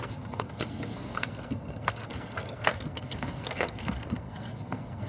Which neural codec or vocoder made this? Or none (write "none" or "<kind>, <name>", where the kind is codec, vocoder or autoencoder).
codec, SNAC